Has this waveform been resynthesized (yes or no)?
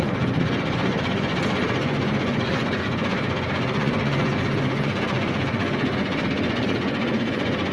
yes